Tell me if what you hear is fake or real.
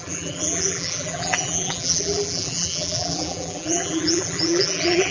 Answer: fake